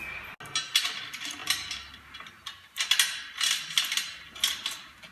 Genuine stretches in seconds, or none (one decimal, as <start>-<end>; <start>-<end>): 0.0-5.1